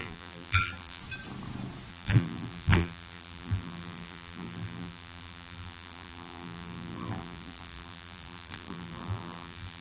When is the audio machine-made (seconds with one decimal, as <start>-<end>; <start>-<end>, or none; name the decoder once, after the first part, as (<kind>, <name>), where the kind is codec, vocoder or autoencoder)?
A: 0.0-1.0 (vocoder, BigVGAN v2); 1.9-9.8